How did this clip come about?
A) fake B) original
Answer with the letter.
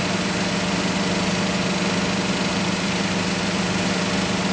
B